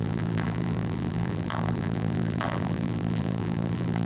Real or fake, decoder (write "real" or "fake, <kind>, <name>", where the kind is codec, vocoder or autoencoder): fake, vocoder, BigVGAN v2